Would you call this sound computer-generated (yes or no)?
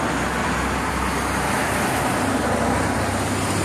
no